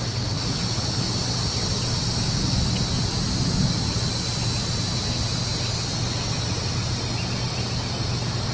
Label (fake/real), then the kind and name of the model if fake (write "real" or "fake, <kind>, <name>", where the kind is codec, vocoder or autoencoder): real